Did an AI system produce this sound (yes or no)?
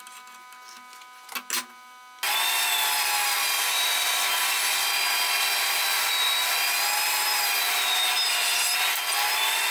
no